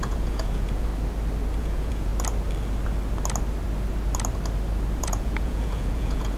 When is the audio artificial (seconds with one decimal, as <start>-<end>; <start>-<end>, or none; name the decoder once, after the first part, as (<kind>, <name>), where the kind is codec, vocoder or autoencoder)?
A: 0.0-0.9 (vocoder, Vocos); 1.6-2.1; 5.0-6.4